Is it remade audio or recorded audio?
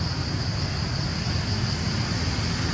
recorded